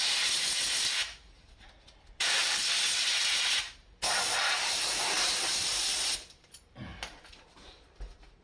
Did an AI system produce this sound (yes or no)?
yes